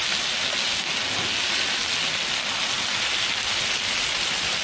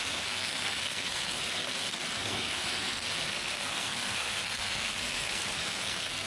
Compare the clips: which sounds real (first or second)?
first